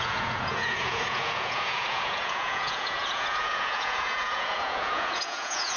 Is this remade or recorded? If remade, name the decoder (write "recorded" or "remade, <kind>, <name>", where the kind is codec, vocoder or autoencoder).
remade, vocoder, Vocos